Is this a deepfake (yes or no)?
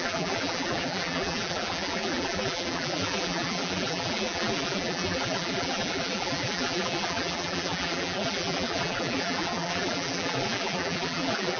yes